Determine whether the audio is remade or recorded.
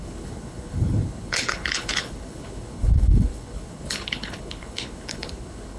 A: remade